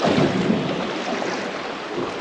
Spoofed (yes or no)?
no